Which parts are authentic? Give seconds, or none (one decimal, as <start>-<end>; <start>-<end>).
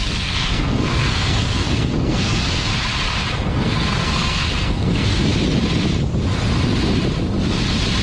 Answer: 2.7-3.3; 5.3-8.0